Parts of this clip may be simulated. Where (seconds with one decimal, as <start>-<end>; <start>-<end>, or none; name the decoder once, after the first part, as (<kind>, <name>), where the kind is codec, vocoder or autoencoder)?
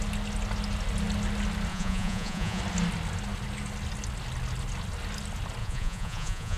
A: 1.7-2.6 (vocoder, Vocos); 5.6-6.6